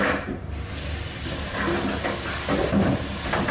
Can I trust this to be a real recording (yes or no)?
yes